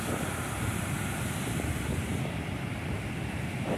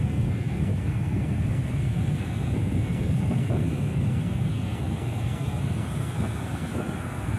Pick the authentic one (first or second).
first